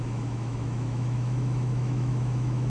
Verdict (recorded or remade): remade